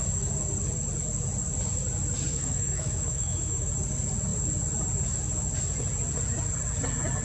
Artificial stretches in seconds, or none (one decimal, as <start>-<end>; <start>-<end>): 2.3-3.7